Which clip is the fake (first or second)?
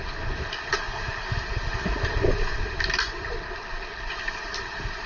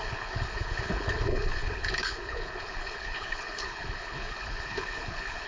second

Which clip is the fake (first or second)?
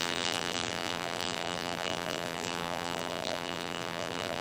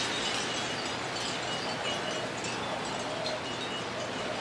first